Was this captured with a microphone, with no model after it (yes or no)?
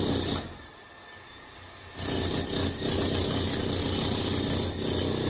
yes